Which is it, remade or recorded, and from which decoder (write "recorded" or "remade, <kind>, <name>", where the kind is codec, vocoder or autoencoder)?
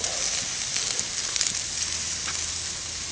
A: recorded